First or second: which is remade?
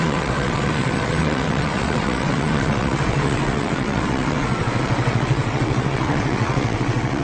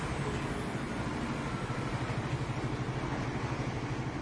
first